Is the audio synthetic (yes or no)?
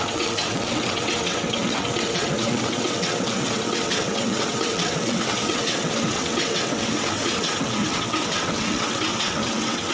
yes